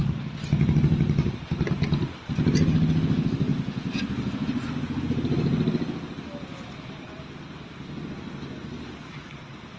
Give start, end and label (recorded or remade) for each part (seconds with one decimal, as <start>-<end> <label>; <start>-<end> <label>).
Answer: 0.0-3.5 recorded; 3.5-4.0 remade; 4.0-9.8 recorded